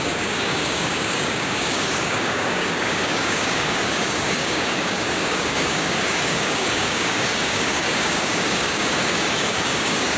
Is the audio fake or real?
fake